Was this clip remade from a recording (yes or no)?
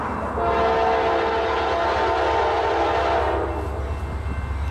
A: no